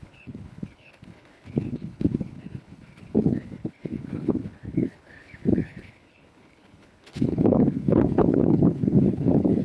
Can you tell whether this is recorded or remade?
remade